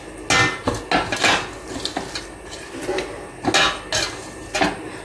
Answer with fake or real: real